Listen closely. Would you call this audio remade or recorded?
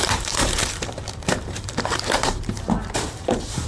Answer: remade